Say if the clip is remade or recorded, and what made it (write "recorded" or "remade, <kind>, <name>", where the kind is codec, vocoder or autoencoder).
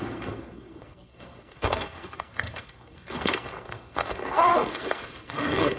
remade, codec, SNAC